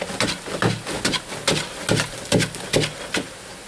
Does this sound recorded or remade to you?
recorded